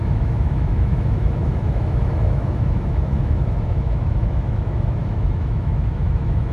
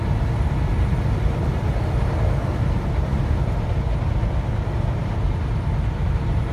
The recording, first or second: second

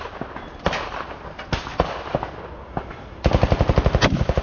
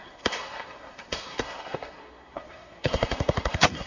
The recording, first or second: first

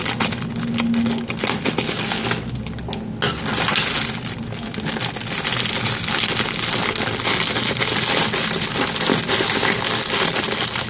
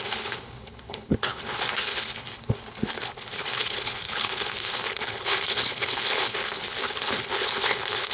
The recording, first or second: first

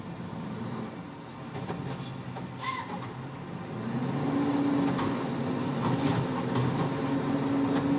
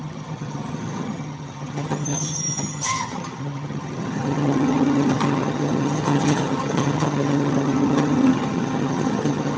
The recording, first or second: first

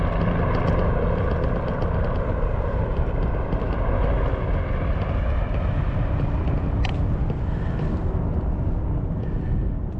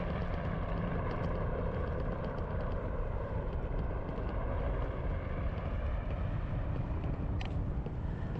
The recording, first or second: first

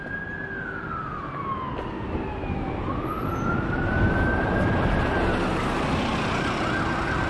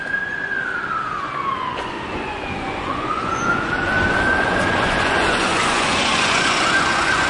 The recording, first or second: first